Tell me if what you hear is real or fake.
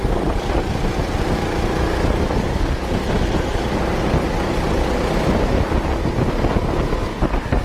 real